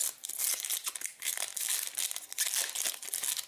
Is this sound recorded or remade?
recorded